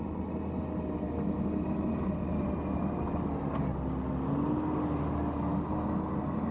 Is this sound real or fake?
real